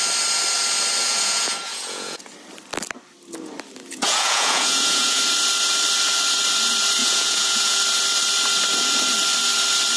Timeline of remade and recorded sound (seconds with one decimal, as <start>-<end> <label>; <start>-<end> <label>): 0.0-1.0 recorded; 1.0-2.2 remade; 2.2-3.9 recorded; 3.9-5.2 remade; 5.2-7.0 recorded; 7.0-7.8 remade; 7.8-10.0 recorded